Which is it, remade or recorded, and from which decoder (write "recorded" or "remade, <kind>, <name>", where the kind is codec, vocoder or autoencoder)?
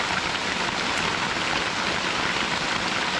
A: recorded